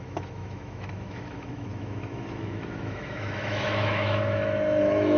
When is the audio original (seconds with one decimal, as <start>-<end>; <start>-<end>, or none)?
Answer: none